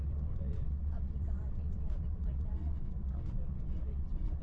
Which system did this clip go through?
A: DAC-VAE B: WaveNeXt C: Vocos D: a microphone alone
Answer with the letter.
B